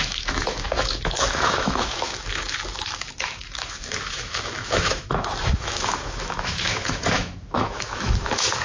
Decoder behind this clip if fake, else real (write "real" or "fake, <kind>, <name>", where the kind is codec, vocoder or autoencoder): fake, autoencoder, DAC-VAE